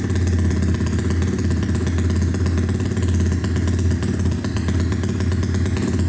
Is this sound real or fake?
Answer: real